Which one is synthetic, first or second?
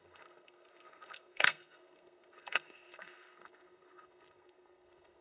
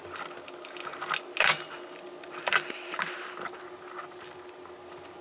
first